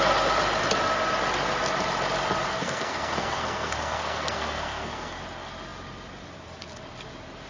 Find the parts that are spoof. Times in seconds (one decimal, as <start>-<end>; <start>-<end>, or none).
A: 2.5-5.2